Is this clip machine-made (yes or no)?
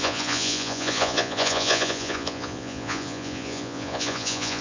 yes